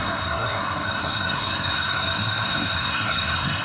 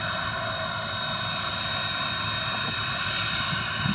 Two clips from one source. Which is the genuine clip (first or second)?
second